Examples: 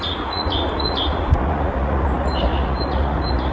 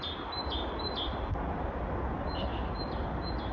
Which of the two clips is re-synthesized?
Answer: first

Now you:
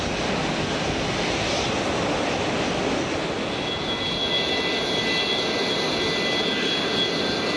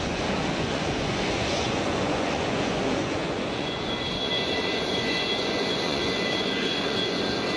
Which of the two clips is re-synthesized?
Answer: second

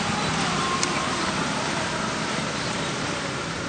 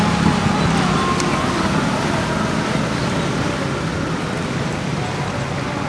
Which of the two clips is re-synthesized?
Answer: first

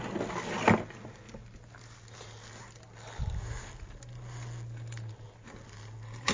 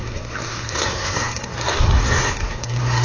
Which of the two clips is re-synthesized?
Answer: second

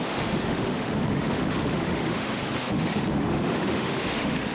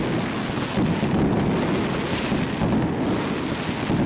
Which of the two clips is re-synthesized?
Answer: first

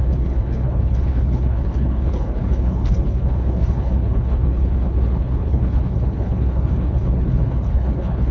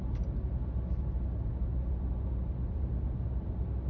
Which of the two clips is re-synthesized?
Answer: first